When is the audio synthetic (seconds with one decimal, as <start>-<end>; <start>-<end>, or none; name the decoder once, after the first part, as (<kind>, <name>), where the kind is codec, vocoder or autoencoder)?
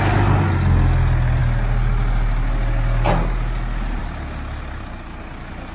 none